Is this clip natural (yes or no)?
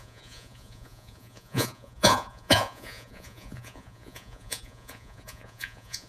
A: no